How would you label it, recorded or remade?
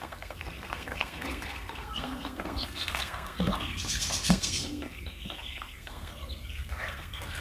remade